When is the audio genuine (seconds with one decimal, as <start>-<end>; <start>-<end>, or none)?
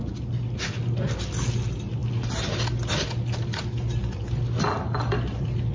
0.0-5.7